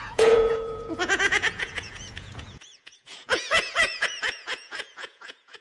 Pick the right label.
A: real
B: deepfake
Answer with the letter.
B